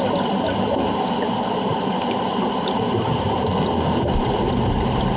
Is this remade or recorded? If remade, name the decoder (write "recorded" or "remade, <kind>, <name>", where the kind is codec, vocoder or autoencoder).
recorded